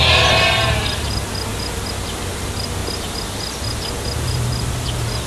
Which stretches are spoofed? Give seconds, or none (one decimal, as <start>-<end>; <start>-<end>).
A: none